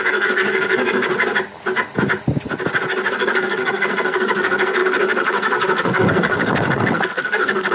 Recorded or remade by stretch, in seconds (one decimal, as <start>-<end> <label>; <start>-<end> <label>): 0.0-1.1 remade; 1.1-3.1 recorded; 3.1-7.7 remade